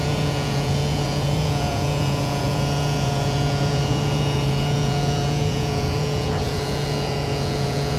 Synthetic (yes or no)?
yes